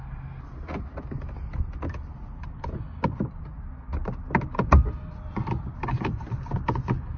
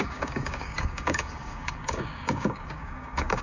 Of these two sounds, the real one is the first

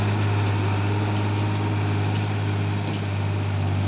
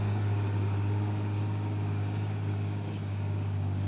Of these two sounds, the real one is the first